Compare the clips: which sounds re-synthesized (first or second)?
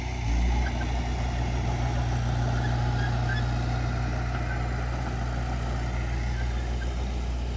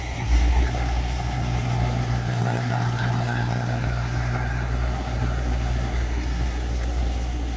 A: second